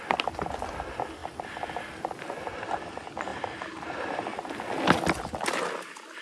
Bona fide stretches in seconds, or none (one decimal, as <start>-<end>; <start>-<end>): 0.0-6.2